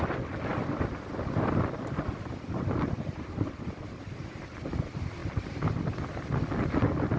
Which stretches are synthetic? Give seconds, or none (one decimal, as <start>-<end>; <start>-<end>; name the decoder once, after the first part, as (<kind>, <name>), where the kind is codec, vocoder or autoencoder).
none